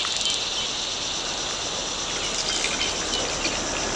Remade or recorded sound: recorded